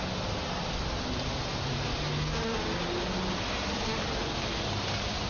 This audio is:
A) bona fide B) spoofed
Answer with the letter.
A